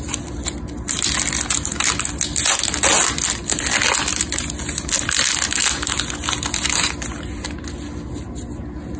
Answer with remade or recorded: recorded